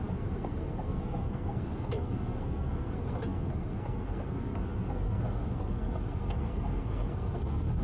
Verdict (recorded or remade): remade